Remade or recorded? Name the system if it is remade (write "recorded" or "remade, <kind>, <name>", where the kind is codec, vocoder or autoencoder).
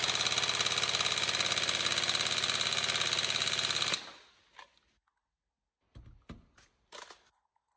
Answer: recorded